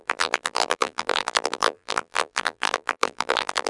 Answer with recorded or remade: remade